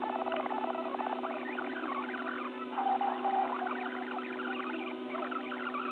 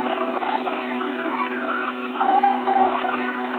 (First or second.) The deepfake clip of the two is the second